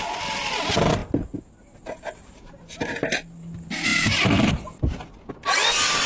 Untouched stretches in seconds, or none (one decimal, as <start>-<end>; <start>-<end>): 0.0-3.9; 5.3-6.1